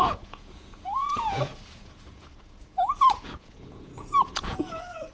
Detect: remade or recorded remade